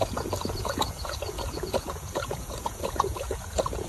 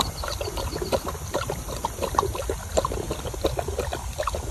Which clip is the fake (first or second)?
first